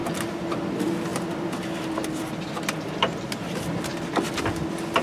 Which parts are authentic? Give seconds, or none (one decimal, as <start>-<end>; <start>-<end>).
0.5-1.1; 4.1-5.0